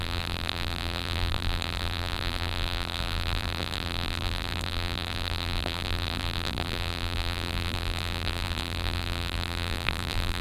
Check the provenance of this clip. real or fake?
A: fake